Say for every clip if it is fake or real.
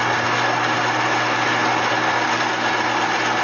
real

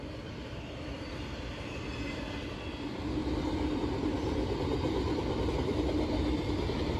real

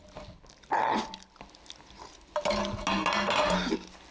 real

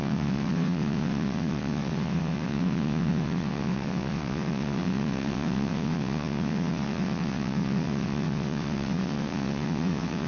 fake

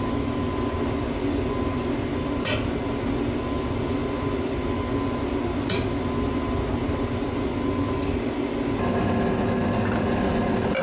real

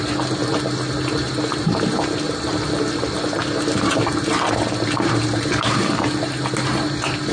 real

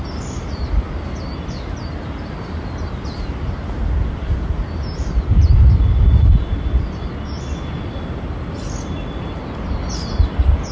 real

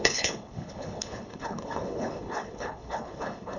fake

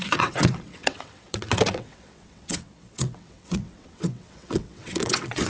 fake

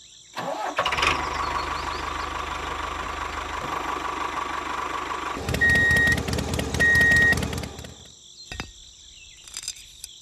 real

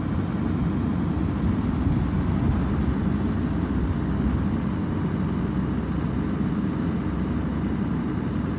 real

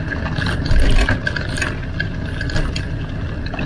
real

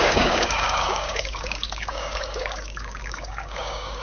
fake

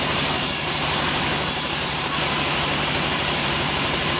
fake